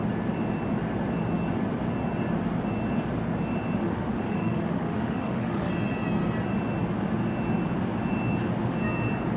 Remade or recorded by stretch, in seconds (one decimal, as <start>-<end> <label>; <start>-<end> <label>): 0.0-3.8 recorded; 3.8-5.7 remade; 5.7-9.4 recorded